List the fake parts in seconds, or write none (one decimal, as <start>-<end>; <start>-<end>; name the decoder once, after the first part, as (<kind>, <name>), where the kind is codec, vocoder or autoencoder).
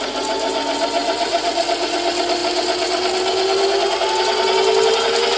1.0-1.6 (vocoder, BigVGAN v2)